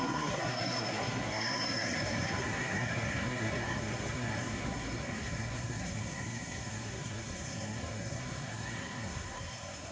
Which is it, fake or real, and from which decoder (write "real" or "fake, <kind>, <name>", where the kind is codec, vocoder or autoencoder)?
fake, codec, SNAC